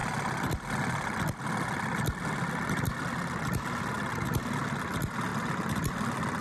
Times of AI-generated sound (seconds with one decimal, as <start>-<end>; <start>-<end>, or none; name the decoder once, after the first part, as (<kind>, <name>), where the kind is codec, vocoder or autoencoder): none